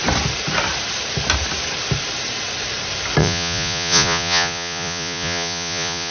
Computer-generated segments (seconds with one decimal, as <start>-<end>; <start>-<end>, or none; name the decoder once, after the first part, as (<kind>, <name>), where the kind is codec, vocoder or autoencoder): 3.2-6.1 (vocoder, Vocos)